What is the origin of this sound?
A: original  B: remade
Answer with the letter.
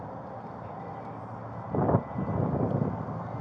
A